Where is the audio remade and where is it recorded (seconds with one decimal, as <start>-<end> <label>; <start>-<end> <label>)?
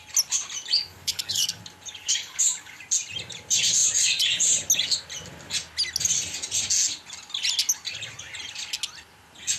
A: 0.0-0.8 recorded; 0.8-1.6 remade; 1.6-2.0 recorded; 2.0-2.8 remade; 2.8-9.6 recorded